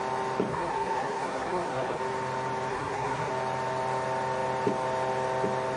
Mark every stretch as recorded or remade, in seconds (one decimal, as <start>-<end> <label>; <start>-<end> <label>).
0.0-0.5 recorded; 0.5-2.0 remade; 2.0-2.7 recorded; 2.7-3.3 remade; 3.3-5.8 recorded